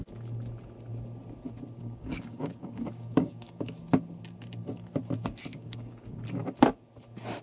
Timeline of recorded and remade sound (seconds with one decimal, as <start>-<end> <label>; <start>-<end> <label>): 0.0-1.8 recorded; 1.8-3.6 remade; 3.6-5.5 recorded; 5.5-6.2 remade; 6.2-7.4 recorded

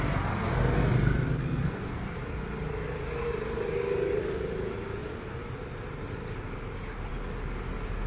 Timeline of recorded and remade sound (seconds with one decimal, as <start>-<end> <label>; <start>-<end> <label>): 0.0-1.4 recorded; 1.4-2.2 remade; 2.2-8.1 recorded